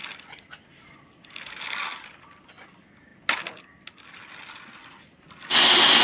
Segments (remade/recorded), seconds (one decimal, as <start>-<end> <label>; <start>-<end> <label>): 0.0-6.0 recorded